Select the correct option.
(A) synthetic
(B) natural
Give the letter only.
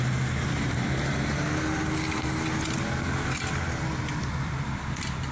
B